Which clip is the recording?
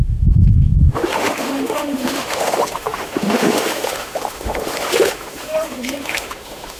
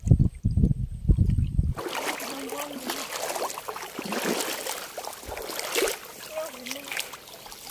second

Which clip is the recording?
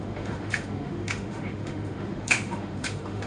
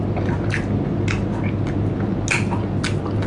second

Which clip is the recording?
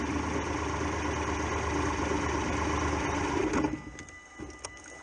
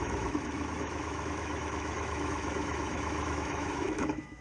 first